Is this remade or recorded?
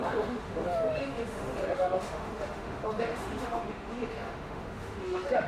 remade